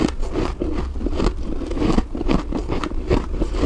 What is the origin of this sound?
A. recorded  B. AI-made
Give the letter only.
A